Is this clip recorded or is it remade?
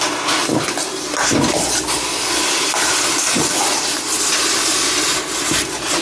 recorded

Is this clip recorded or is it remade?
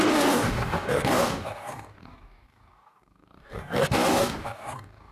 remade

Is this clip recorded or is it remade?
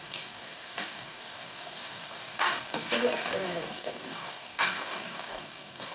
remade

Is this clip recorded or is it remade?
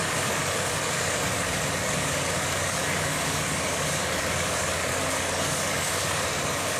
remade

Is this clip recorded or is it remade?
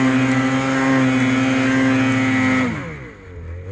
recorded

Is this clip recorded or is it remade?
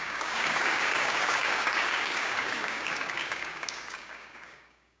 remade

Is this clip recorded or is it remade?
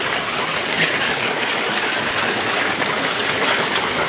remade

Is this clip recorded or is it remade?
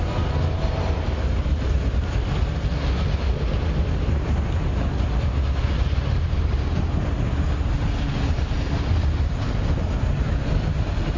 recorded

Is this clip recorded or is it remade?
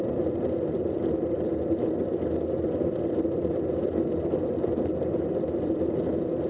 recorded